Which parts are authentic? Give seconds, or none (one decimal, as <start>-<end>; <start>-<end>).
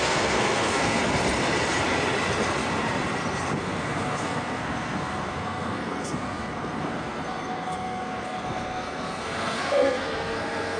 1.0-3.6